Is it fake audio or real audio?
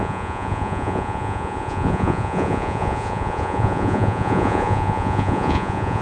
fake